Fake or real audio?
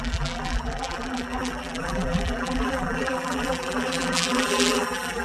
fake